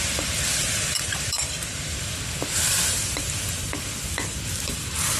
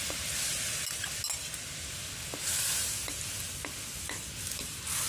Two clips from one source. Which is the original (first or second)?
second